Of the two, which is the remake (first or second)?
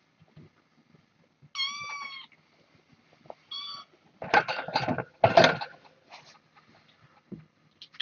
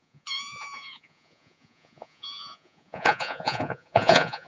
second